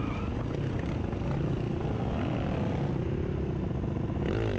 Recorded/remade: recorded